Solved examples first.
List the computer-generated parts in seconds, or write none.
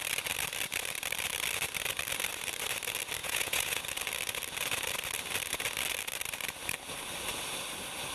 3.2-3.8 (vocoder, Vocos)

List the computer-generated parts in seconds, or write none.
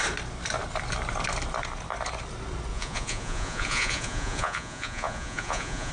2.7-5.9 (vocoder, Vocos)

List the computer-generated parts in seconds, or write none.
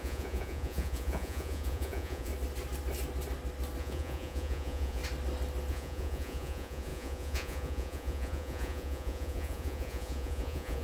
0.0-2.3 (vocoder, Vocos); 3.8-5.0; 5.7-10.8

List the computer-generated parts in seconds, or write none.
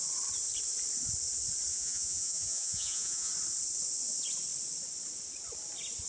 1.7-3.3 (vocoder, Vocos)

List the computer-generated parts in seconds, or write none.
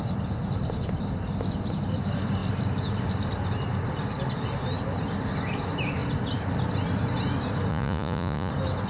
7.7-8.5 (vocoder, Vocos)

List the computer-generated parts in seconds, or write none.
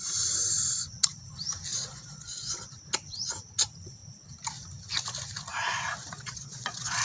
1.7-2.7 (vocoder, Vocos); 6.0-7.0